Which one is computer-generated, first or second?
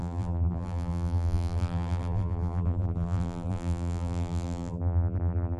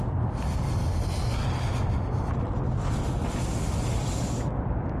first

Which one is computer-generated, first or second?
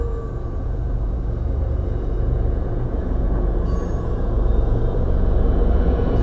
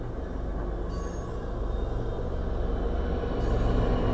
first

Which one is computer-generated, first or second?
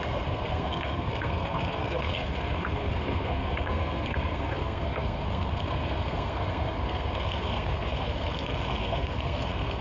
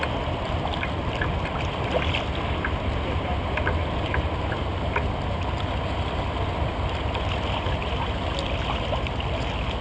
first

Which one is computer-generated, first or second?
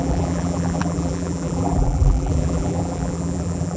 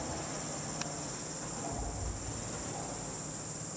first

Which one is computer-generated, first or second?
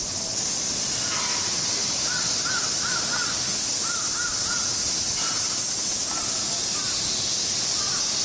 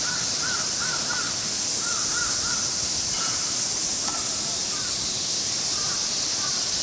second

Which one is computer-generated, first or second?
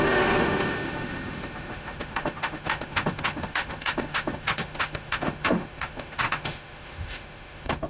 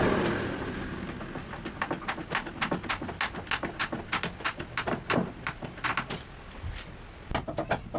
first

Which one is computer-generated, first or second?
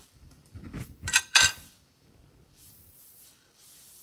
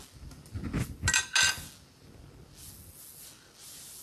first